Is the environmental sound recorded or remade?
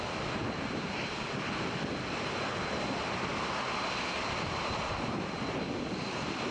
recorded